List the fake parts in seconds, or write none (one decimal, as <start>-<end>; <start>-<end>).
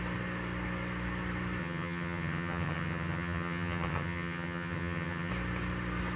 1.6-5.3